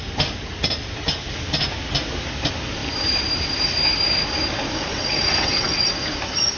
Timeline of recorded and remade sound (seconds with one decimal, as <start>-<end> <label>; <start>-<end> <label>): 0.0-4.9 recorded; 4.9-5.9 remade; 5.9-6.6 recorded